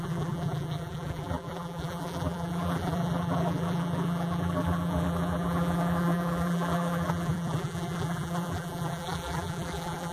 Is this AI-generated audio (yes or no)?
yes